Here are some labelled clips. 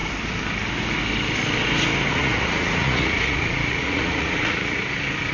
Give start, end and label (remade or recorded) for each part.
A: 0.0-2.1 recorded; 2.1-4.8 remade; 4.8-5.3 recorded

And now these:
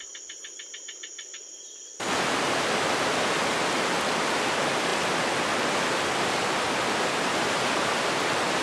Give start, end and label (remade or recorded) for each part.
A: 0.0-8.6 recorded

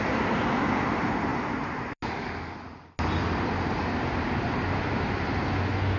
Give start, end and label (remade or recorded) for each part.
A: 0.0-6.0 recorded

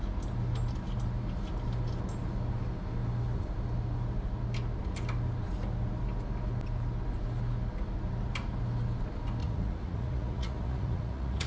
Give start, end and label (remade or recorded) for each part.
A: 0.0-9.4 recorded; 9.4-11.5 remade

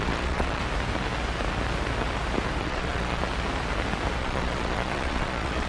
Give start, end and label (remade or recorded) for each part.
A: 0.0-0.6 remade; 0.6-2.6 recorded; 2.6-3.2 remade; 3.2-4.2 recorded; 4.2-5.7 remade